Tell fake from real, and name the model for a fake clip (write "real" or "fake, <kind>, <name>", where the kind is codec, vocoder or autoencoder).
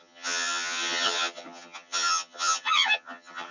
fake, vocoder, HiFi-GAN